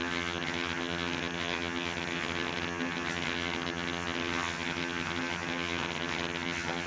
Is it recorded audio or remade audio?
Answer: remade